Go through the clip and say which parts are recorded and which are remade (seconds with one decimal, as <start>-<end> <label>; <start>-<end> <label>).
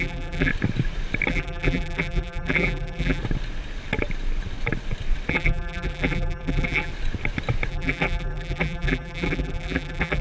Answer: 0.0-0.5 remade; 0.5-1.3 recorded; 1.3-3.2 remade; 3.2-5.3 recorded; 5.3-6.9 remade; 6.9-7.7 recorded; 7.7-10.2 remade